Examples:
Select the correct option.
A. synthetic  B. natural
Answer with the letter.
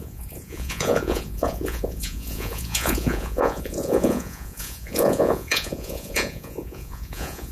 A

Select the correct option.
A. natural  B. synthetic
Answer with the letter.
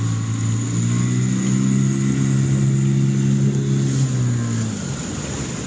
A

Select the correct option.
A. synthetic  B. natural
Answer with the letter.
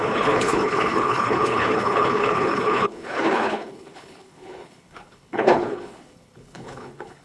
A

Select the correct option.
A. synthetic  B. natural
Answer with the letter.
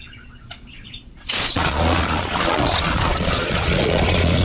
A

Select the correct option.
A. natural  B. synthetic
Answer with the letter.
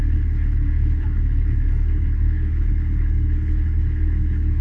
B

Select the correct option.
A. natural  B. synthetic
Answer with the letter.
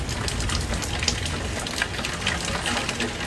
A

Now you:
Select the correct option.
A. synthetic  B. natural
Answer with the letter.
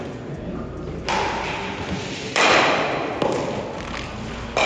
B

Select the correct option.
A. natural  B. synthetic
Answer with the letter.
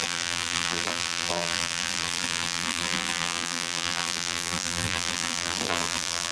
B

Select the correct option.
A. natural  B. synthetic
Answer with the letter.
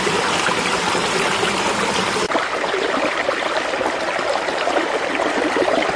A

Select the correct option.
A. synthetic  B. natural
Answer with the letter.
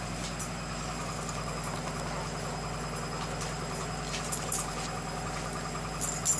B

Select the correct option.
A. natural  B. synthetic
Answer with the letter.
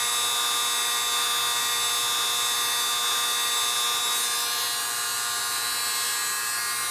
A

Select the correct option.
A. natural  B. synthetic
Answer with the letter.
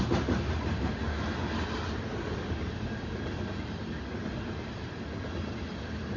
A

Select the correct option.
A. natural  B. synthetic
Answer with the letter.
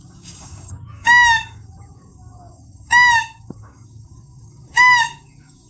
B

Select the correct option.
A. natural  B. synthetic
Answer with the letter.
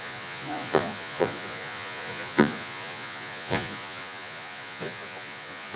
B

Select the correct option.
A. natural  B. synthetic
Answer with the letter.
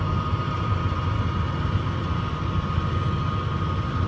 A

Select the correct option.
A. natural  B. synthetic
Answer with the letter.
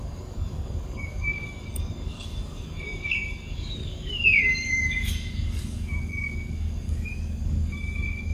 B